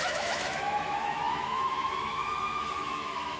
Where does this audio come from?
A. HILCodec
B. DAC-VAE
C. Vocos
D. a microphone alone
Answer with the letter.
B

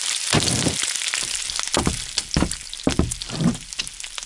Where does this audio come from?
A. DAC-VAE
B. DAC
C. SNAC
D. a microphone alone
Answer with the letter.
D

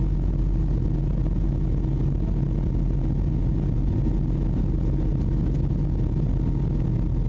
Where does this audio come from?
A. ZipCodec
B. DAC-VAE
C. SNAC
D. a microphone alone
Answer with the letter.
D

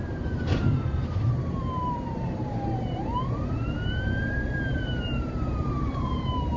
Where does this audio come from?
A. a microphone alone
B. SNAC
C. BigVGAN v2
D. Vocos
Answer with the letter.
C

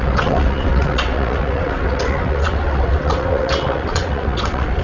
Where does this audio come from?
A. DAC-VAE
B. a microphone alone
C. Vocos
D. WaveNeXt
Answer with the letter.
D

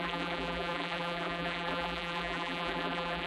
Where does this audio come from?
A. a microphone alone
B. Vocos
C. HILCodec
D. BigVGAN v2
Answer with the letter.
D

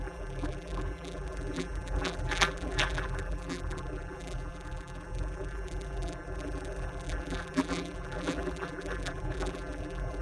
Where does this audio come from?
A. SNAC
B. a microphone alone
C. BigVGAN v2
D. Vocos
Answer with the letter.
C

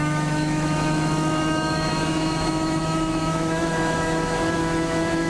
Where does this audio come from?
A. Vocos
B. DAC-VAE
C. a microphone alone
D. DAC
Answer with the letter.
B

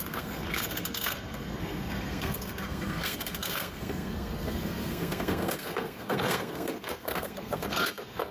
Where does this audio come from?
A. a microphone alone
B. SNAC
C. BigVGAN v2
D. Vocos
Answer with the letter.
B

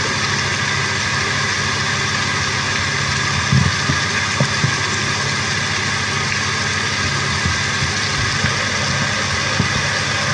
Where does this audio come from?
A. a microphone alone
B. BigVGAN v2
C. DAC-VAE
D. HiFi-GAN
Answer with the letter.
A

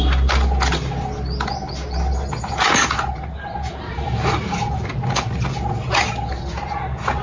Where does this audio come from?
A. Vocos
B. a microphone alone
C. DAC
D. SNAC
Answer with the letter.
B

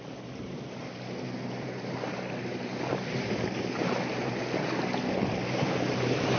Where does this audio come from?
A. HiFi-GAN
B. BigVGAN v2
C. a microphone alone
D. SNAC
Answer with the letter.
C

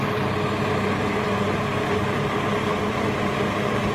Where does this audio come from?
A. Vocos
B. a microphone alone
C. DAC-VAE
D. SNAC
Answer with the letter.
B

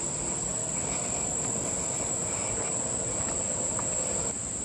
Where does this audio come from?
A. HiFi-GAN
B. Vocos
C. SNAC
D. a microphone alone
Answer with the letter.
D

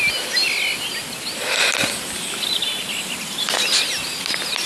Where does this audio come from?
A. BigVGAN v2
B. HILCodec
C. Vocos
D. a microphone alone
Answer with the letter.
D